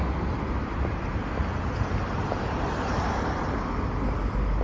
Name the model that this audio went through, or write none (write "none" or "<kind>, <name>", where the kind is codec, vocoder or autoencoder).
none